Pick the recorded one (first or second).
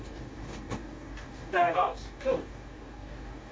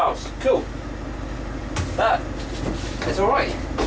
second